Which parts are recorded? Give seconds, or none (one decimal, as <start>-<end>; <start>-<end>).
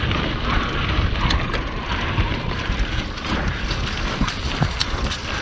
0.0-2.3; 3.3-5.4